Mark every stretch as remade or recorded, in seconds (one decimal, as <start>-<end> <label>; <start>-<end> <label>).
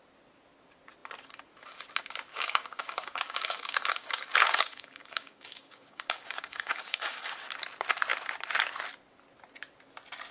0.0-2.3 recorded; 2.3-7.3 remade; 7.3-10.3 recorded